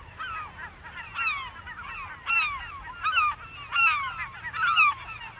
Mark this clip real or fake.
real